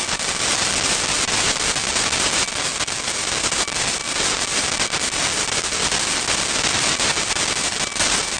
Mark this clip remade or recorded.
recorded